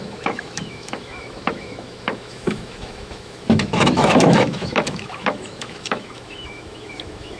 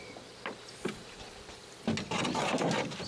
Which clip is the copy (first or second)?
first